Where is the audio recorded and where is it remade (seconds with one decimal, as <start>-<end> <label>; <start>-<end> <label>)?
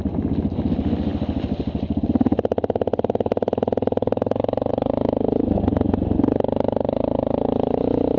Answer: 0.0-8.2 recorded